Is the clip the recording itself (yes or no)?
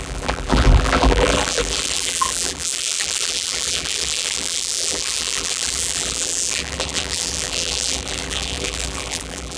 no